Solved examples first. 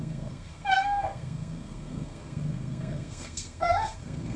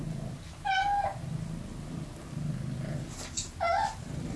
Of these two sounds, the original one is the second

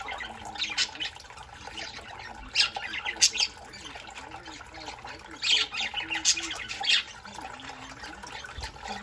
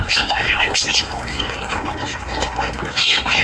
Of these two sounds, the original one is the first